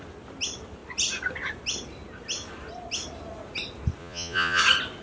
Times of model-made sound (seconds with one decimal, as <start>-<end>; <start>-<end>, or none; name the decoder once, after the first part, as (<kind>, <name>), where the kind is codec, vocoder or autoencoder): 4.0-4.6 (vocoder, Vocos)